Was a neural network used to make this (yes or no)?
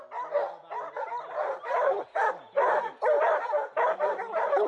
no